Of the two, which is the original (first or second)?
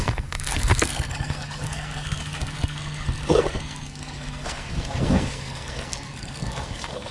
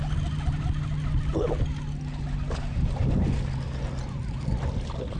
second